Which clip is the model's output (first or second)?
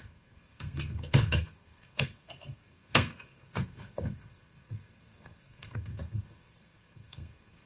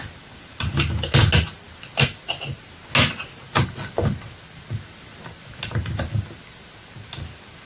first